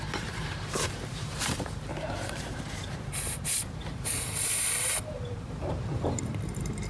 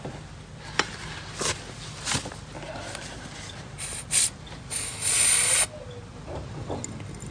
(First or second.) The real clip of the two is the second